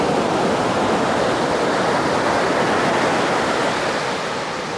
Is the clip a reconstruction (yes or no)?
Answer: no